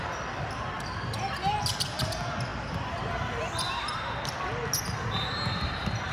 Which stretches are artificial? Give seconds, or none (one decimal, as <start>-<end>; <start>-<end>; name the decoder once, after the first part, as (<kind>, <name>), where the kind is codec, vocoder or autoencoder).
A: none